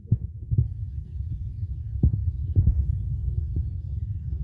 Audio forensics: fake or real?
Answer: fake